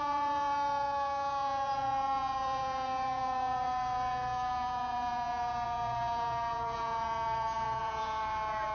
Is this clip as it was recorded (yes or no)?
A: no